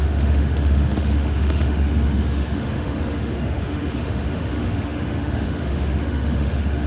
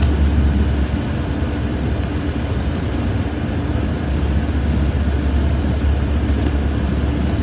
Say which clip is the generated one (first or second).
first